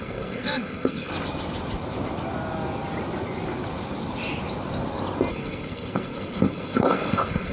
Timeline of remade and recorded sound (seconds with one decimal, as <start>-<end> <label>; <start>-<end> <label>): 0.0-1.1 remade; 1.1-5.3 recorded; 5.3-7.5 remade

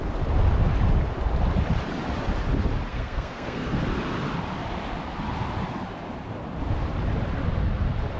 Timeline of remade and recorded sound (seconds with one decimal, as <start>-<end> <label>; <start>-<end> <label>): 0.0-2.9 recorded; 2.9-3.8 remade; 3.8-8.2 recorded